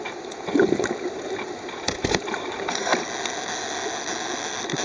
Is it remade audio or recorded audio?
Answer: recorded